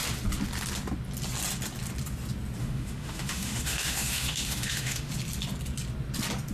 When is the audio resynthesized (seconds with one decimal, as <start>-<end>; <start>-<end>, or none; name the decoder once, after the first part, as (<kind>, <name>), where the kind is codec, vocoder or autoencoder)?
2.6-5.1 (autoencoder, DAC-VAE)